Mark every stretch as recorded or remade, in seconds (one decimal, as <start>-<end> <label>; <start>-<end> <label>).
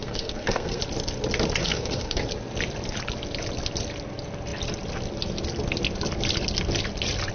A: 0.0-0.8 remade; 0.8-1.6 recorded; 1.6-2.2 remade; 2.2-7.3 recorded